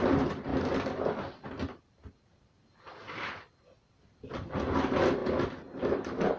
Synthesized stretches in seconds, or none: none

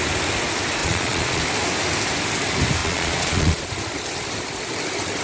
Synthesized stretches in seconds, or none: 0.8-1.4; 2.8-3.6

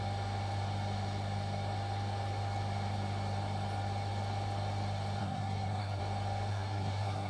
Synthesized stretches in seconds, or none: 5.2-6.0; 6.5-7.3

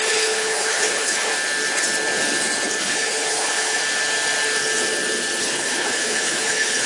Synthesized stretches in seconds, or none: 0.0-1.3; 2.8-3.8; 5.4-6.9

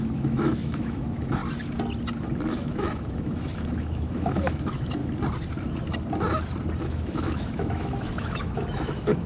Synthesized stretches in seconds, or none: 0.0-1.4; 2.5-5.0; 6.8-9.3